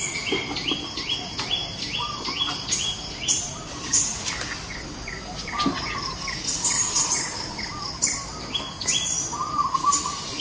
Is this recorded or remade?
recorded